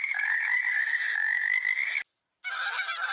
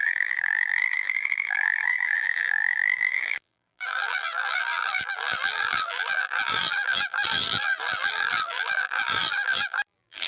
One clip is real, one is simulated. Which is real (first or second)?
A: first